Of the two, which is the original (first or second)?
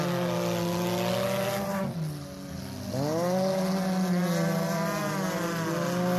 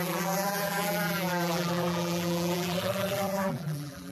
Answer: first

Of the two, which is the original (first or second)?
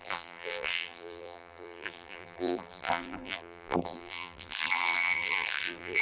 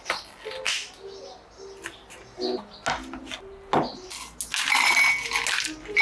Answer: second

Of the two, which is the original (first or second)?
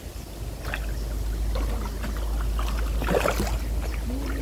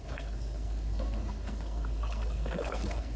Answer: first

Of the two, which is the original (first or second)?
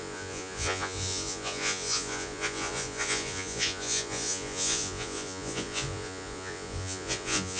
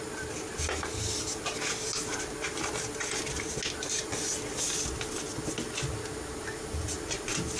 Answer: second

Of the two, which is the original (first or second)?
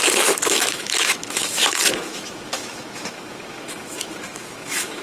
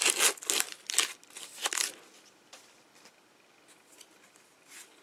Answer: second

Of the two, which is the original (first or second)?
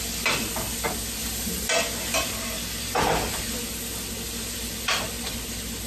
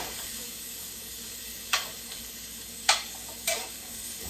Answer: first